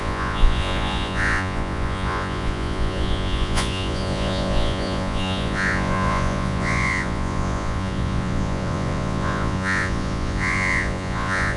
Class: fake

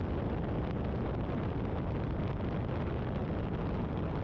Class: real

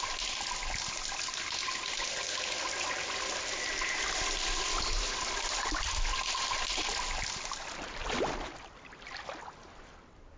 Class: real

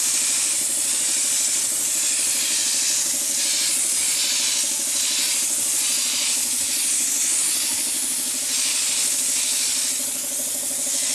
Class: real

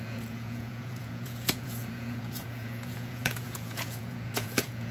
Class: fake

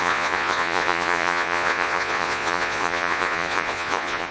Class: fake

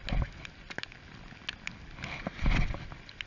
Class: real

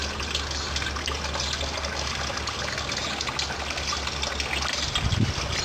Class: real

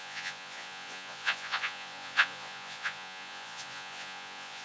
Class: fake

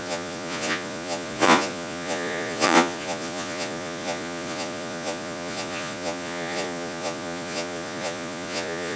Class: fake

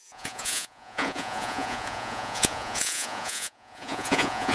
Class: fake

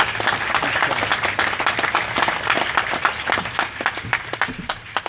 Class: real